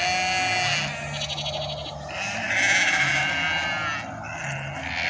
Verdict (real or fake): real